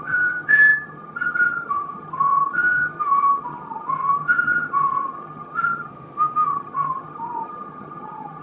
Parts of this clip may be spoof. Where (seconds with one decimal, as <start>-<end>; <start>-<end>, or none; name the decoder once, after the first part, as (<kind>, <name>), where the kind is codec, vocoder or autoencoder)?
0.0-5.9 (vocoder, HiFi-GAN); 6.5-8.4